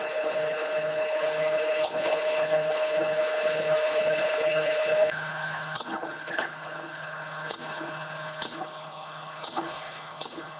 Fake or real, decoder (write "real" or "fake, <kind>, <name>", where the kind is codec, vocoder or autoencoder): fake, codec, HILCodec